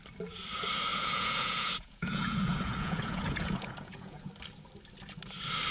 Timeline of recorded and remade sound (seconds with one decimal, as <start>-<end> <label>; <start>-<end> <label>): 0.0-0.9 recorded; 0.9-4.3 remade; 4.3-5.7 recorded